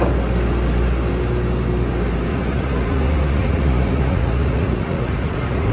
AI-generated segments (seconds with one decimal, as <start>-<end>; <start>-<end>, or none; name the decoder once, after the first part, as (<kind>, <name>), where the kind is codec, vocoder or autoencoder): 2.3-5.7 (vocoder, Vocos)